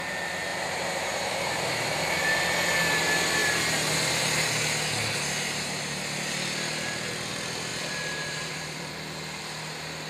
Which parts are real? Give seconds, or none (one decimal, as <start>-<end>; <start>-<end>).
0.0-0.5; 2.4-7.7; 8.9-10.1